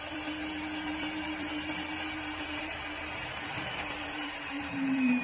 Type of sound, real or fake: fake